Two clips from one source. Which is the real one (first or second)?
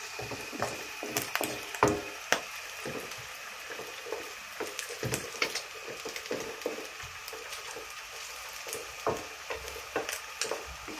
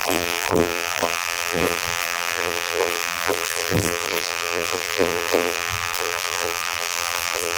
first